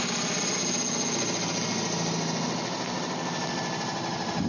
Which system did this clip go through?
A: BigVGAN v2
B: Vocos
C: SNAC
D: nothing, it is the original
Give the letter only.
D